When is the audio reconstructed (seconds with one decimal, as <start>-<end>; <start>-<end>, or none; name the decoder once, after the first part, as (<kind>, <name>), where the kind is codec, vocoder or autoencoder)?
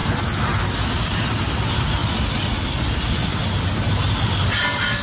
none